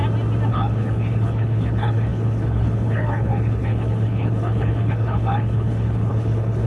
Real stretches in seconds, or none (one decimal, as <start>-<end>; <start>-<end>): 0.0-0.5